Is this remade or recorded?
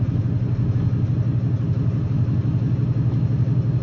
recorded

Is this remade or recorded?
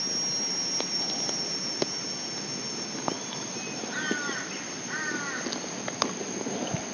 recorded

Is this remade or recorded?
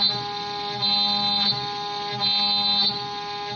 recorded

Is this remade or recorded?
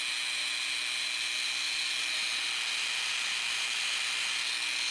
recorded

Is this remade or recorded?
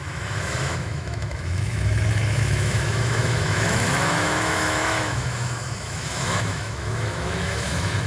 remade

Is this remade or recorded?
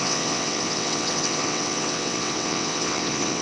remade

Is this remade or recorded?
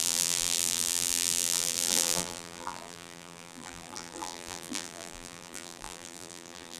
remade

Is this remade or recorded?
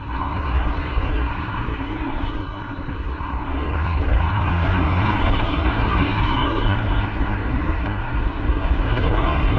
remade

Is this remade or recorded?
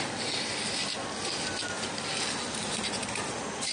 recorded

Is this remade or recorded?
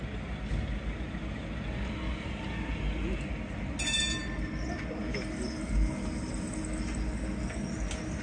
recorded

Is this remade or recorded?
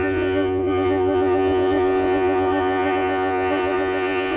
remade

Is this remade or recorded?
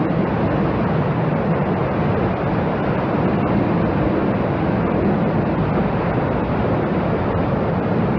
recorded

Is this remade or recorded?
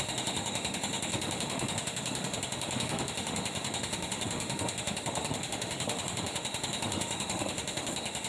remade